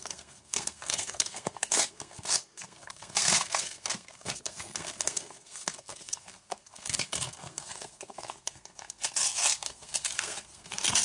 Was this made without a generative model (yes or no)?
no